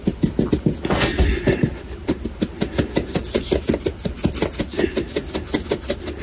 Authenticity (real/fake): real